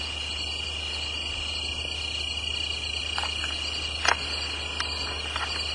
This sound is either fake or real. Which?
real